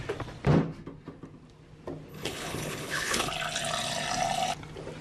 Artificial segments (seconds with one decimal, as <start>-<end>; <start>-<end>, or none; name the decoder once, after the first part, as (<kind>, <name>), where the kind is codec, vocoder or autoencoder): 2.1-3.3 (codec, HILCodec)